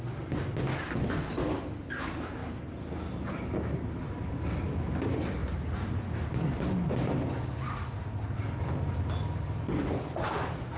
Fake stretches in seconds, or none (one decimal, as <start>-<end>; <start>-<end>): none